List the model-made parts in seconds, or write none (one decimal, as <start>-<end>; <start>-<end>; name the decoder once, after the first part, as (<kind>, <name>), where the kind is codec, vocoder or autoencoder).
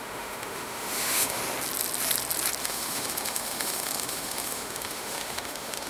0.0-1.4 (autoencoder, DAC-VAE); 2.6-5.9